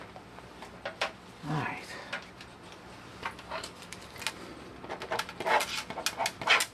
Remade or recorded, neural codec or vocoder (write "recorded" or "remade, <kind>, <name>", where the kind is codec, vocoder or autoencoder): recorded